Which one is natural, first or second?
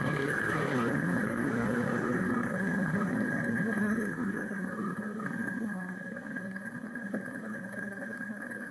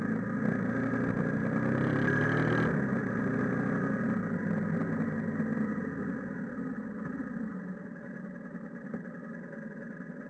second